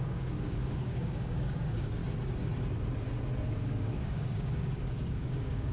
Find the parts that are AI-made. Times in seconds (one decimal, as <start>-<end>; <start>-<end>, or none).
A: 0.0-2.0; 3.5-5.7